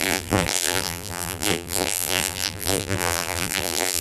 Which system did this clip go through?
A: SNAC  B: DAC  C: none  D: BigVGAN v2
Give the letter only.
D